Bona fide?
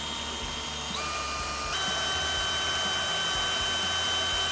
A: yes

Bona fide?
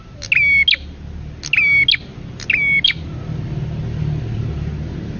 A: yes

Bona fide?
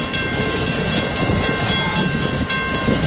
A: yes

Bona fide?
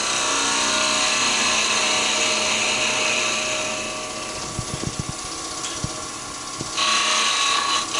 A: yes